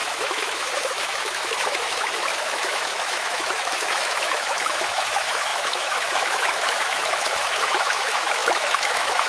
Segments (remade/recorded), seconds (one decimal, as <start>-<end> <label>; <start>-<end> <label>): 0.0-9.3 remade